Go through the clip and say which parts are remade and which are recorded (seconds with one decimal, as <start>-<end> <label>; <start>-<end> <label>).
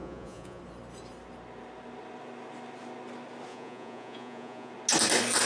0.0-0.6 remade; 0.6-3.5 recorded; 3.5-4.7 remade; 4.7-5.5 recorded